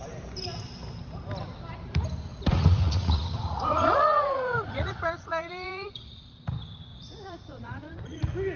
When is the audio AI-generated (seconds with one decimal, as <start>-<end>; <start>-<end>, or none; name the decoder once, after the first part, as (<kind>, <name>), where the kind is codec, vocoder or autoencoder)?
2.3-6.3 (vocoder, Vocos); 6.9-8.2